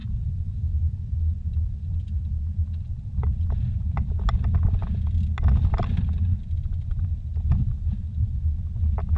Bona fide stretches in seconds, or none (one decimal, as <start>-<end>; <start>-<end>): 4.1-9.2